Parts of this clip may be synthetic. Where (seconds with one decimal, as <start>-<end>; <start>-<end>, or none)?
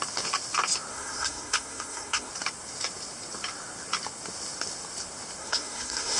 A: 0.9-2.3; 5.4-6.2